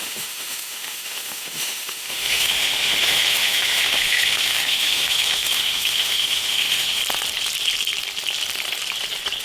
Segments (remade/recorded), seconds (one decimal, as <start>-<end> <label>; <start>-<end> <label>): 0.0-7.0 remade; 7.0-9.4 recorded